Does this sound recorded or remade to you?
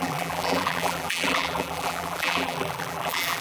remade